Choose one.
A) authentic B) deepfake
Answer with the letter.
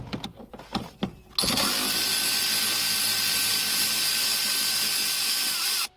A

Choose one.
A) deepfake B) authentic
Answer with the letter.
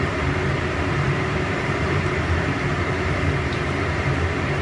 A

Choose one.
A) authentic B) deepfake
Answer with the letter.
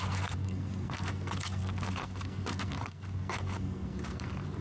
B